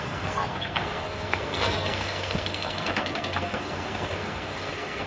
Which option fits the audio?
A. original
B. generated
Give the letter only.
B